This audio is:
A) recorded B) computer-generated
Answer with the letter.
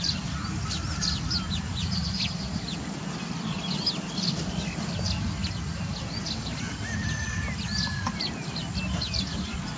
A